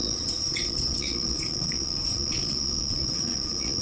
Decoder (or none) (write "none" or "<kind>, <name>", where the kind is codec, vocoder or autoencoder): vocoder, Vocos